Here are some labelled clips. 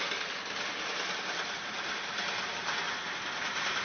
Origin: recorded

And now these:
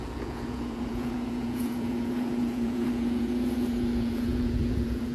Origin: remade